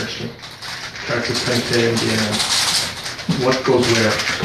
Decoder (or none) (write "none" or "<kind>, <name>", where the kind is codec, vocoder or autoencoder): none